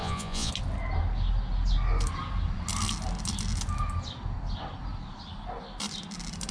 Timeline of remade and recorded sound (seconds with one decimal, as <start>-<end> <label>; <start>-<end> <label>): 0.0-0.5 remade; 0.5-6.5 recorded